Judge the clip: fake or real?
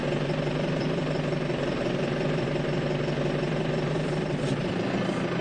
fake